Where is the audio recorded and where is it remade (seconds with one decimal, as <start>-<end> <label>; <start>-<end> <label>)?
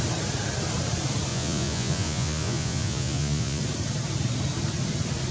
0.0-1.3 recorded; 1.3-3.6 remade; 3.6-5.3 recorded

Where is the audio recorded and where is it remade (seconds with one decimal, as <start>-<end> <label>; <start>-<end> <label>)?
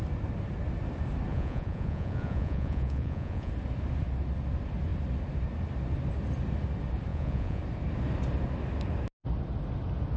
0.0-1.3 recorded; 1.3-3.5 remade; 3.5-7.1 recorded; 7.1-7.6 remade; 7.6-10.2 recorded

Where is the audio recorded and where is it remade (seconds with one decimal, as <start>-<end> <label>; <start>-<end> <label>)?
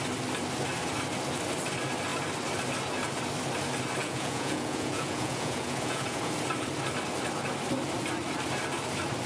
0.0-4.0 recorded; 4.0-6.3 remade; 6.3-9.3 recorded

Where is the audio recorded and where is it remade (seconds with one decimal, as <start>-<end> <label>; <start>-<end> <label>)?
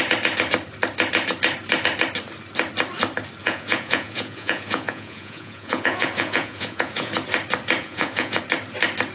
0.0-3.4 recorded; 3.4-7.1 remade; 7.1-7.8 recorded; 7.8-8.4 remade; 8.4-9.1 recorded